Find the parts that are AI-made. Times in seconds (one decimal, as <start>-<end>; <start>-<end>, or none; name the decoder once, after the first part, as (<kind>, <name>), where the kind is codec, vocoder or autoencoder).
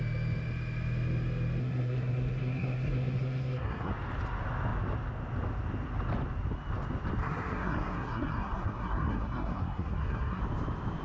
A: 1.6-3.9 (codec, SNAC); 7.2-10.4